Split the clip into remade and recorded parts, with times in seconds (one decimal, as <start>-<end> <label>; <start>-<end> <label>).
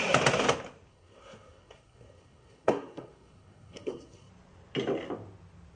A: 0.0-0.9 recorded; 0.9-4.3 remade; 4.3-5.7 recorded